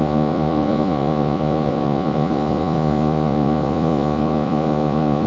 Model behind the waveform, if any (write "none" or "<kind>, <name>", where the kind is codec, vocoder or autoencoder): vocoder, Vocos